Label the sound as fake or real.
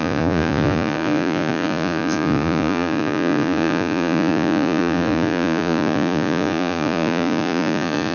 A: fake